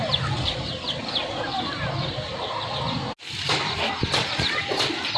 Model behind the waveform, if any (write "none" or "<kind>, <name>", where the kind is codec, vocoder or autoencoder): none